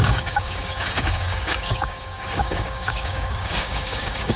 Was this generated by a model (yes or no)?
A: yes